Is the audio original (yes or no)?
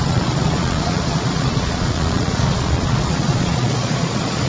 no